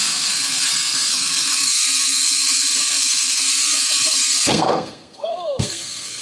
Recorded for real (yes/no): no